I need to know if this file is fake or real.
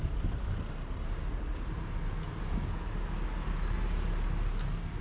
real